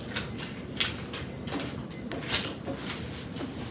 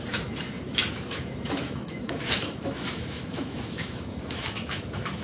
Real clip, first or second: first